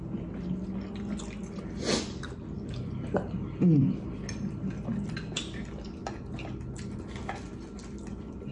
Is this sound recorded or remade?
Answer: recorded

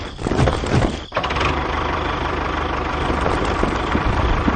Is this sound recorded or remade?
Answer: remade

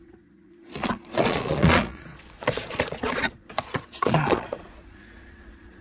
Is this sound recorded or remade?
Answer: remade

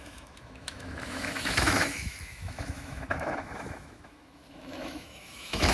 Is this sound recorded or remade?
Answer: remade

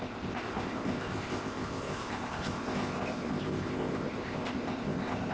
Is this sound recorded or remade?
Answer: remade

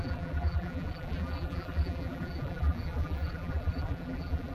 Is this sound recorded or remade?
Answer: remade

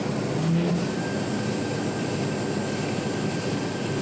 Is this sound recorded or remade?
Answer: recorded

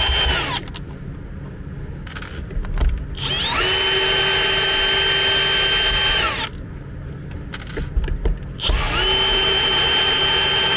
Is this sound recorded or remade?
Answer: recorded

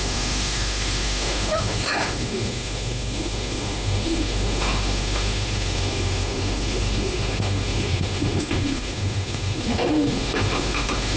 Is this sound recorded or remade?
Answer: remade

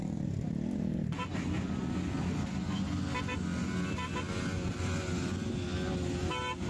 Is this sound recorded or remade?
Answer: recorded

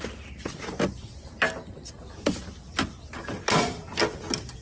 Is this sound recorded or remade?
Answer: recorded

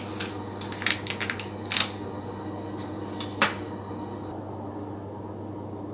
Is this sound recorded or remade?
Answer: recorded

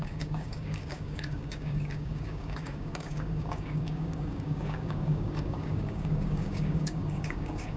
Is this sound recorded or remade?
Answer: remade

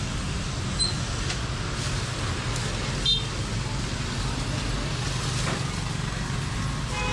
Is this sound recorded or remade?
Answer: recorded